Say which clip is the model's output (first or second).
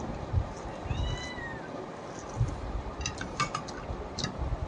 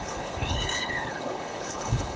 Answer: second